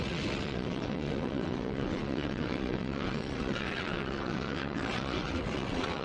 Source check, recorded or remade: remade